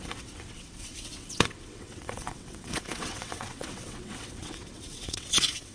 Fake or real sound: fake